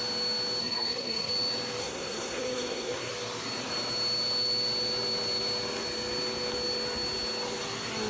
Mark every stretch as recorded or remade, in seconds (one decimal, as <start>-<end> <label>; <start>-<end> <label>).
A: 0.0-0.6 recorded; 0.6-1.3 remade; 1.3-1.8 recorded; 1.8-3.1 remade; 3.1-8.1 recorded